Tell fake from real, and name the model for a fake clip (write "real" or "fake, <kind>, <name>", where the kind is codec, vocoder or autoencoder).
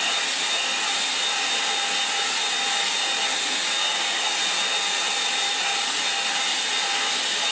real